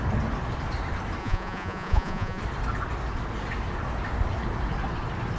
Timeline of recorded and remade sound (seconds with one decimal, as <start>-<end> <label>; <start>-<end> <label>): 0.0-1.2 recorded; 1.2-2.4 remade; 2.4-5.4 recorded